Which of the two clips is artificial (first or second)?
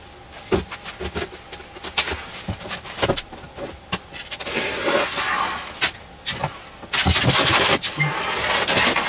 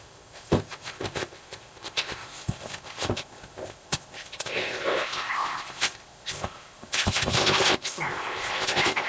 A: second